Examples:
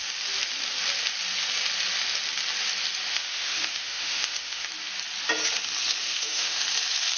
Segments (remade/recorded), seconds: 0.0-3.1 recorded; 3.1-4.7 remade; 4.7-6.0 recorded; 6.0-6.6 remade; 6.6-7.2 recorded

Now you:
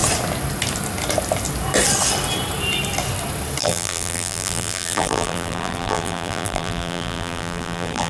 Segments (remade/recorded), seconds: 0.0-3.6 recorded; 3.6-8.1 remade

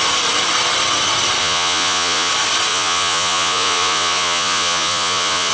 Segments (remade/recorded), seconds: 0.0-1.4 recorded; 1.4-2.3 remade; 2.3-2.7 recorded; 2.7-5.5 remade